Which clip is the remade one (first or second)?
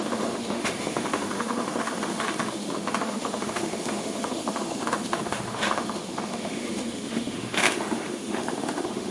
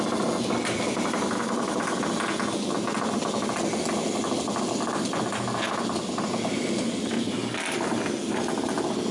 first